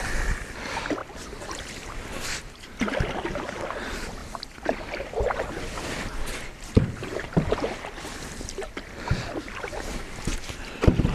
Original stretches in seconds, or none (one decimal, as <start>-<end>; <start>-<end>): 0.0-11.1